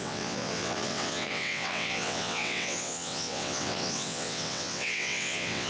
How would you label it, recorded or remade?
remade